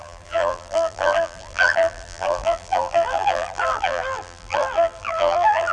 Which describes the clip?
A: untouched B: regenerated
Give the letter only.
B